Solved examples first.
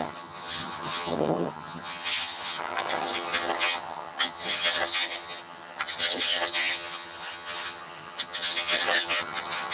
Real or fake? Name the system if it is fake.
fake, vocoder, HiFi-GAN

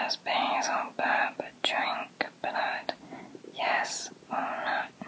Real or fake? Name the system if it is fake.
real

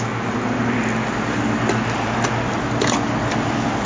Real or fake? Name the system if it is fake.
real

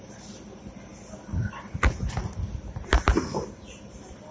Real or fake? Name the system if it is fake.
real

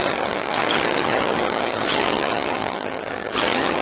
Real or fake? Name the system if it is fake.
fake, vocoder, HiFi-GAN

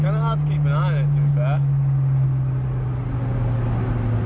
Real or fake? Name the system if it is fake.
real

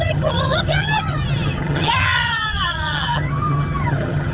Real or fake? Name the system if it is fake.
fake, vocoder, HiFi-GAN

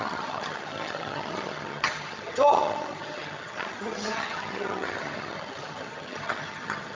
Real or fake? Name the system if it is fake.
fake, vocoder, HiFi-GAN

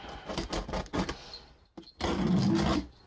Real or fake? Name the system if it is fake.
real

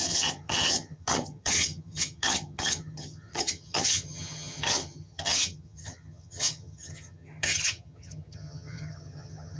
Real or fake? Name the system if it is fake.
fake, vocoder, HiFi-GAN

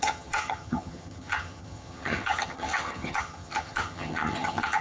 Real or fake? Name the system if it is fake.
fake, vocoder, HiFi-GAN